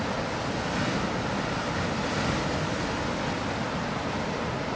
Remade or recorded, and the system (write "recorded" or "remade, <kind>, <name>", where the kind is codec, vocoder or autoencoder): recorded